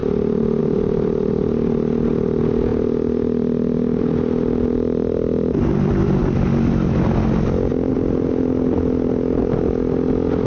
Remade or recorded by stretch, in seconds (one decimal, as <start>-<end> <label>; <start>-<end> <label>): 0.0-10.5 recorded